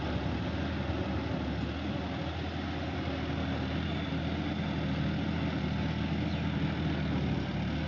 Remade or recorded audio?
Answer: recorded